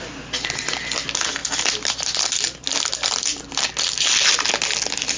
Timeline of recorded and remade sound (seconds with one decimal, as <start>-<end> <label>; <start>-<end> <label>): 0.0-5.2 recorded